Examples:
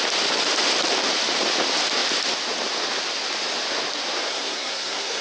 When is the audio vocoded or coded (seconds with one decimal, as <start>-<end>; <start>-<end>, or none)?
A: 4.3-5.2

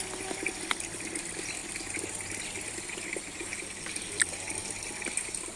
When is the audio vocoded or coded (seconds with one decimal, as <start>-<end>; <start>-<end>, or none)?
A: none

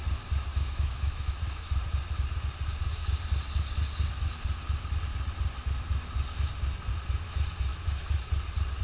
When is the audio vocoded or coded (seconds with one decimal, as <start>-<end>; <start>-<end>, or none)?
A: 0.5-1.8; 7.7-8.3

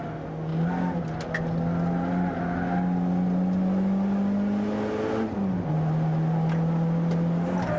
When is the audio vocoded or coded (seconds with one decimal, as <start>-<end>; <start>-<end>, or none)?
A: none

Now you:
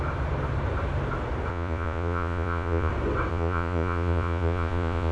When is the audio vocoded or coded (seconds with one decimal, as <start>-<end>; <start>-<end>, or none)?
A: 1.5-2.9; 3.3-5.1

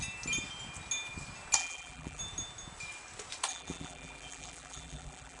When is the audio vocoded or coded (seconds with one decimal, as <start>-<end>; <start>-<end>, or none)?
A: 1.6-2.2; 3.5-5.4